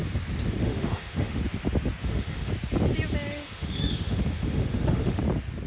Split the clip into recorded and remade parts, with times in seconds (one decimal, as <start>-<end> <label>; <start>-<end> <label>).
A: 0.0-0.6 recorded; 0.6-1.4 remade; 1.4-2.0 recorded; 2.0-2.5 remade; 2.5-3.3 recorded; 3.3-5.2 remade; 5.2-5.7 recorded